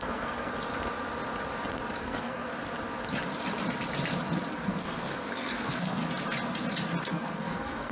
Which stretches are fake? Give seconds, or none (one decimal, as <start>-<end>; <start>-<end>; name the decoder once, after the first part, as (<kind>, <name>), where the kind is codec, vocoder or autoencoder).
0.0-0.5 (codec, SNAC); 2.0-2.5; 4.5-6.0; 7.1-7.9